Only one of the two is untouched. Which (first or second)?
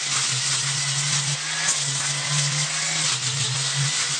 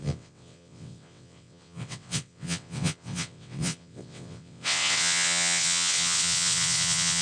first